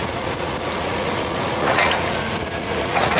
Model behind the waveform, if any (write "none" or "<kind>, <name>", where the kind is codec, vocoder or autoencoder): vocoder, Vocos